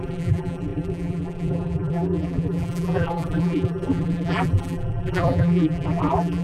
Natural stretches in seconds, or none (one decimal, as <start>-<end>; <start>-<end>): none